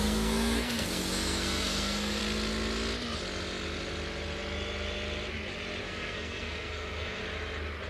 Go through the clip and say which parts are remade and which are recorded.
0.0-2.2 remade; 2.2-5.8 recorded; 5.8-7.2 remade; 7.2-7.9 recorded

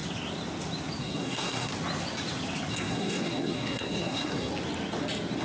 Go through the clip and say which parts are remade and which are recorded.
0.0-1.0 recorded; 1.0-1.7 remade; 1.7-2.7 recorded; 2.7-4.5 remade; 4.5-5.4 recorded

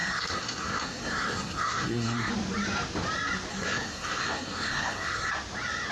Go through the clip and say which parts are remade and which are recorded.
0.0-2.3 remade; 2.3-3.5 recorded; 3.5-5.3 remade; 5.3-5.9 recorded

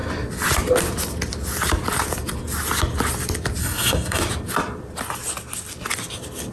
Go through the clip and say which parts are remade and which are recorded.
0.0-3.6 recorded; 3.6-4.2 remade; 4.2-6.5 recorded

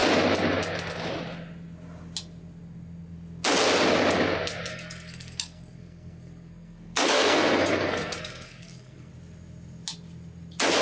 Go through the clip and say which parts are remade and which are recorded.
0.0-4.7 recorded; 4.7-9.1 remade; 9.1-10.8 recorded